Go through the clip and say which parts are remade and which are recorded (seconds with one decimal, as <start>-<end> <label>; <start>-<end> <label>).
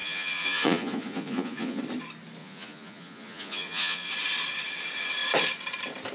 0.0-1.8 remade; 1.8-2.4 recorded; 2.4-4.1 remade; 4.1-6.1 recorded